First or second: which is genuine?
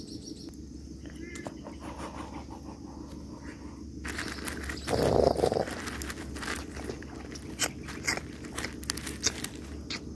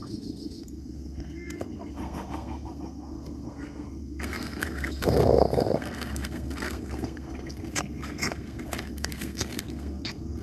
first